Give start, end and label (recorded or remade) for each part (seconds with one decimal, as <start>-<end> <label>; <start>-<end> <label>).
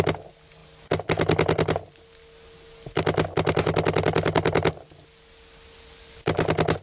0.0-6.8 recorded